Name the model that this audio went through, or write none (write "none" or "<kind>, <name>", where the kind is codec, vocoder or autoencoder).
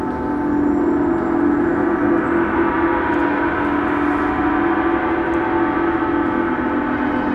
none